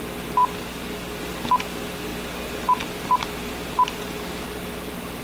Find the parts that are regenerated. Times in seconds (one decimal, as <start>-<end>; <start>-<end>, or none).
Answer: none